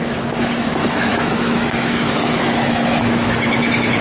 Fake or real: fake